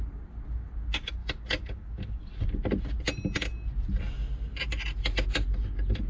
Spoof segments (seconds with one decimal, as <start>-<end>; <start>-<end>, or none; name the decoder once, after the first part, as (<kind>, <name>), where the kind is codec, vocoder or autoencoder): none